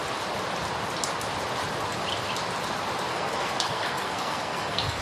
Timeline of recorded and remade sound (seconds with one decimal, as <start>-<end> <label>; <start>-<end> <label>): 0.0-3.1 recorded; 3.1-5.0 remade